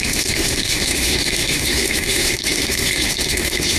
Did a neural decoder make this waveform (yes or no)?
yes